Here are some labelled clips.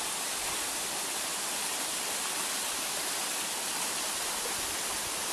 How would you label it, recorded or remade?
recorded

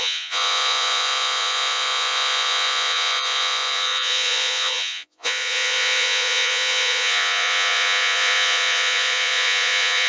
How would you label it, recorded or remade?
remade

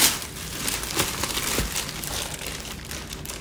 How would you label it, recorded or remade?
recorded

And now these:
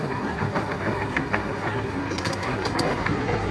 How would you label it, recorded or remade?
remade